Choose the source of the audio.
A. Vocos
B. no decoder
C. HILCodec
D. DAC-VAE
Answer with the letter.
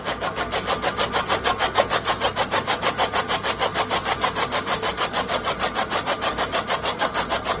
B